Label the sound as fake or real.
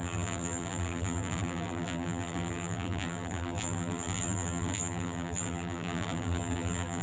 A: fake